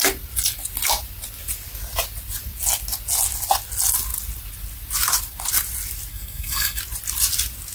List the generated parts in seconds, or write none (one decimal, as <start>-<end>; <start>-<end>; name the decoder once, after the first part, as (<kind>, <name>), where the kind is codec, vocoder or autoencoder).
6.1-6.8 (codec, SNAC)

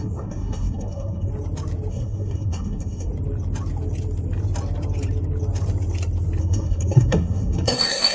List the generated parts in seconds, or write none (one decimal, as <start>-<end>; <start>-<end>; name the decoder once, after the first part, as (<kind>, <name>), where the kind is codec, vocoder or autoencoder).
0.0-1.3 (codec, SNAC); 1.9-3.1; 6.4-8.1